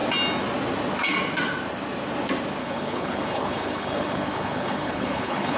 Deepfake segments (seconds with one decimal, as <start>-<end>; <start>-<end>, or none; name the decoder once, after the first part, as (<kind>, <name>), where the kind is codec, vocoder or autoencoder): 2.6-5.6 (codec, HILCodec)